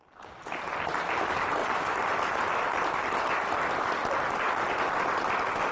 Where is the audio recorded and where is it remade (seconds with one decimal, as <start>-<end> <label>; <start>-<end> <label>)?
0.0-1.6 recorded; 1.6-5.0 remade; 5.0-5.7 recorded